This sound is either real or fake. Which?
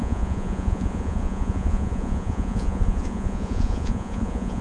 fake